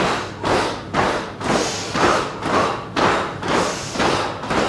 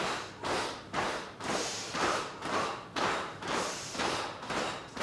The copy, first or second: second